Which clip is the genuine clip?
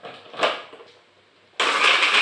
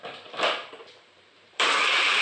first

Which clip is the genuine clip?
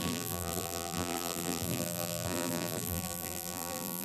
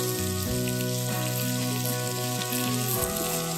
second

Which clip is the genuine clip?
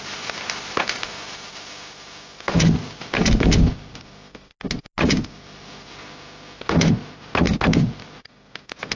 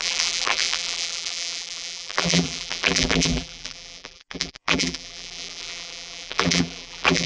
first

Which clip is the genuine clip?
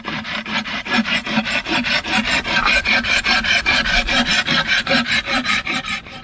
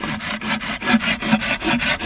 second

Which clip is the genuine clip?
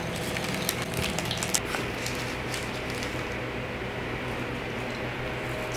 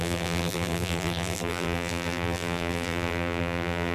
first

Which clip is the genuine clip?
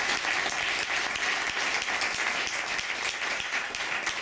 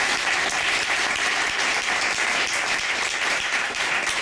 first